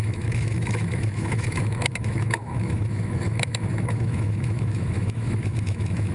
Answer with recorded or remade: remade